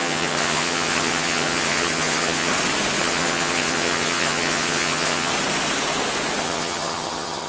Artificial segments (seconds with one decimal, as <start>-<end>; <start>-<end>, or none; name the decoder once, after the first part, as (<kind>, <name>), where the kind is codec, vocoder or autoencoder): 0.0-2.5 (vocoder, HiFi-GAN); 3.0-5.3; 6.4-7.5